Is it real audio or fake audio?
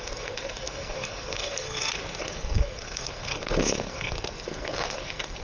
fake